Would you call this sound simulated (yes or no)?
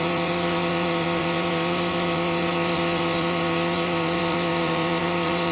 yes